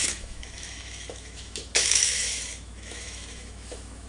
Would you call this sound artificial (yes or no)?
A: yes